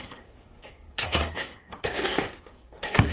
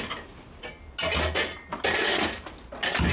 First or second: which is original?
second